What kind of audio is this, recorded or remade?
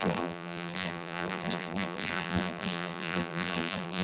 remade